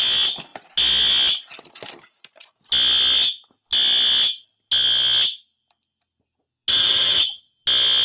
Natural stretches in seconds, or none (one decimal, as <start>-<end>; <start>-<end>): 0.0-6.7; 7.4-8.0